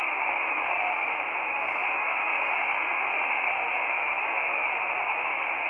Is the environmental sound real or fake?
fake